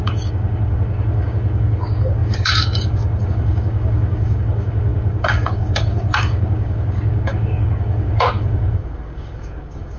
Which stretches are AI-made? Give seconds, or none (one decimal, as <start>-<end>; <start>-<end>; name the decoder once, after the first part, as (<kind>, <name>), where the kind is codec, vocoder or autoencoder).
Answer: 0.0-10.0 (codec, DAC)